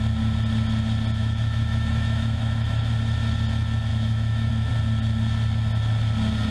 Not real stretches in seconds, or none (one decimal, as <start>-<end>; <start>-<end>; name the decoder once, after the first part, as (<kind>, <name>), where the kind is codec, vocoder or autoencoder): 1.2-2.9 (autoencoder, DAC-VAE); 3.9-4.5